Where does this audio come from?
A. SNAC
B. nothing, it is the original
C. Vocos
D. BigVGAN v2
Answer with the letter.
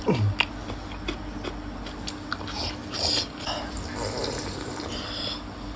B